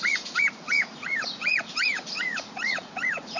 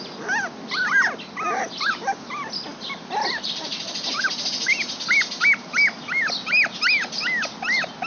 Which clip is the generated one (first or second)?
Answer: first